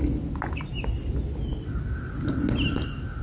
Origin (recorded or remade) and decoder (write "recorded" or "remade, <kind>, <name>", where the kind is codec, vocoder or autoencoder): recorded